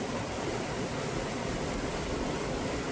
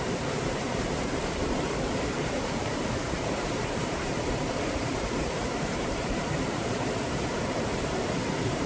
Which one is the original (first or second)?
first